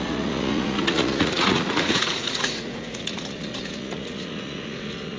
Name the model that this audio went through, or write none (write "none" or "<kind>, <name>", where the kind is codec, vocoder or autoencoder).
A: vocoder, Vocos